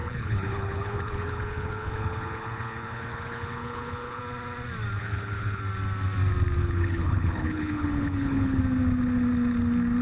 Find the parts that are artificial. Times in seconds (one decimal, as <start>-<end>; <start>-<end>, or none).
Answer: 0.0-4.2; 5.0-5.6; 6.6-8.6